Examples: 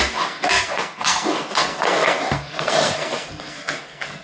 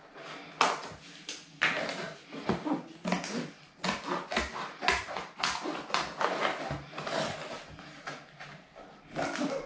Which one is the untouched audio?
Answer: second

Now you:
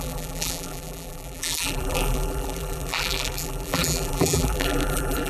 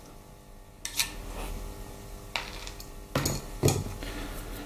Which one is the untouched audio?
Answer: second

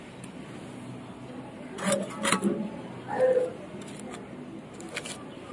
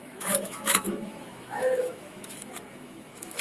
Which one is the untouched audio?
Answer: first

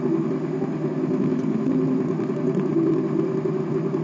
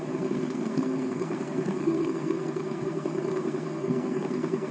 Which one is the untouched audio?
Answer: first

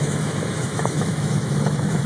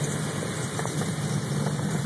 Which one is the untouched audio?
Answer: second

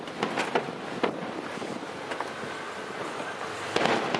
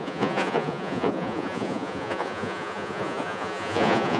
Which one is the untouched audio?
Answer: first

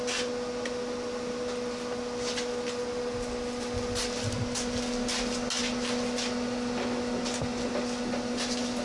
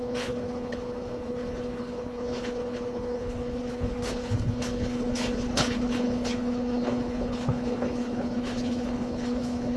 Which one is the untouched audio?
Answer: first